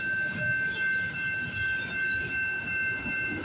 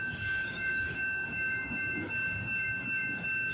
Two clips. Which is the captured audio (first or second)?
first